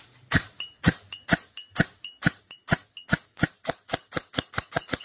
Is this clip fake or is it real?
real